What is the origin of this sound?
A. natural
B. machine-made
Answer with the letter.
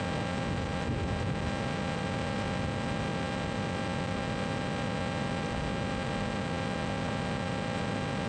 A